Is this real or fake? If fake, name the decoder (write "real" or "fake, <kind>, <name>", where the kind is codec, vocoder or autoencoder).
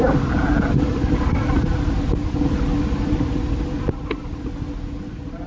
real